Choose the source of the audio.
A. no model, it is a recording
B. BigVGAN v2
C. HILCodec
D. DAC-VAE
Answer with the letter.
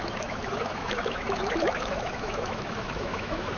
D